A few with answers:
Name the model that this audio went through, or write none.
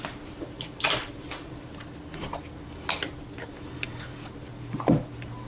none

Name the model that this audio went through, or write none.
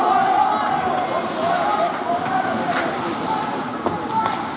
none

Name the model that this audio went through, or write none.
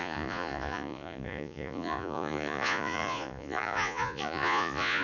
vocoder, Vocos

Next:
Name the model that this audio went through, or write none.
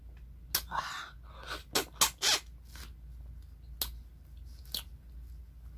none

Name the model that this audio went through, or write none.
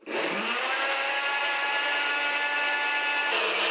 none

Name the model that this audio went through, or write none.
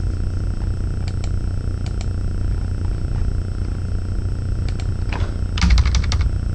none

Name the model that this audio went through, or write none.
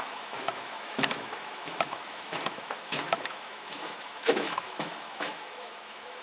autoencoder, DAC-VAE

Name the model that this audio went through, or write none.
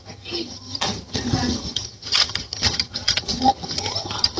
vocoder, HiFi-GAN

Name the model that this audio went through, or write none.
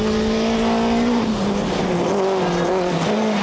none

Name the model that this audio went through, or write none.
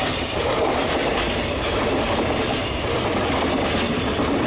none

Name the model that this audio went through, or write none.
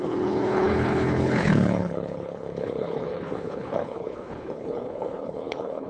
codec, HILCodec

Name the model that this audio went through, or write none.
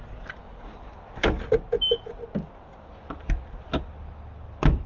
none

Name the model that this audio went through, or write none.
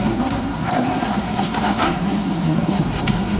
codec, SNAC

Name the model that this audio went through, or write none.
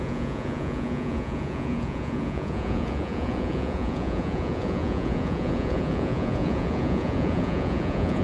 vocoder, Vocos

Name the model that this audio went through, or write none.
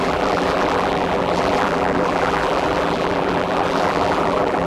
vocoder, BigVGAN v2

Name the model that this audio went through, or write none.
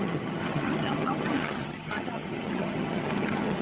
vocoder, HiFi-GAN